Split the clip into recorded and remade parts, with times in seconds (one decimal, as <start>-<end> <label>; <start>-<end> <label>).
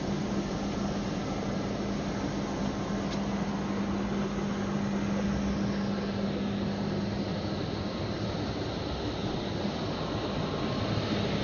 0.0-11.4 recorded